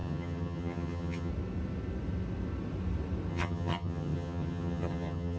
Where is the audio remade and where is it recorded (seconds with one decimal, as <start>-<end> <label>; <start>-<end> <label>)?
0.0-1.3 remade; 1.3-3.3 recorded; 3.3-5.4 remade

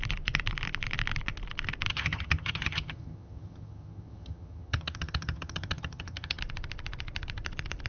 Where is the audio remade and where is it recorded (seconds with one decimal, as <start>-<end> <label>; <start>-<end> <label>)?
0.0-1.9 recorded; 1.9-6.4 remade; 6.4-7.9 recorded

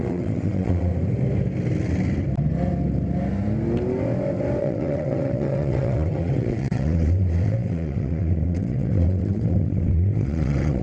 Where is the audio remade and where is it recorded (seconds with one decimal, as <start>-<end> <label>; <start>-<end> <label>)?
0.0-0.9 remade; 0.9-4.6 recorded; 4.6-10.8 remade

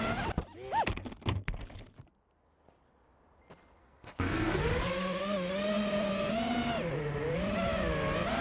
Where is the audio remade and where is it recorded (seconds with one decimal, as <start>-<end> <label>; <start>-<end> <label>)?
0.0-3.8 recorded; 3.8-4.6 remade; 4.6-8.4 recorded

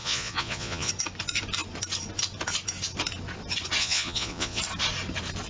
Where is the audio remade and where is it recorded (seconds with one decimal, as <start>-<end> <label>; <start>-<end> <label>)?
0.0-0.9 remade; 0.9-3.8 recorded; 3.8-4.6 remade; 4.6-5.5 recorded

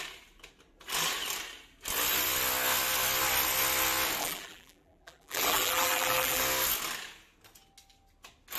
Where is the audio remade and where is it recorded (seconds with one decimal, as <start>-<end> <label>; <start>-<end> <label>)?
0.0-4.2 recorded; 4.2-6.4 remade; 6.4-8.6 recorded

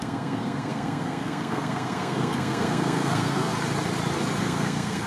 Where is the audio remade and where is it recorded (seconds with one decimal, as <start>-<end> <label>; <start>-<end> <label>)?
0.0-3.5 remade; 3.5-4.4 recorded; 4.4-5.1 remade